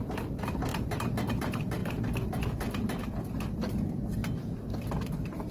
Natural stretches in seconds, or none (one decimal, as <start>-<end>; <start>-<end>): 0.7-1.4